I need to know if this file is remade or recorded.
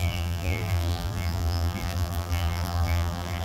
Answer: remade